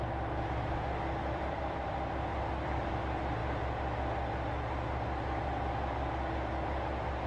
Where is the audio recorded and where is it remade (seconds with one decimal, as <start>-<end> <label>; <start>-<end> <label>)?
0.0-1.2 recorded; 1.2-2.9 remade; 2.9-7.3 recorded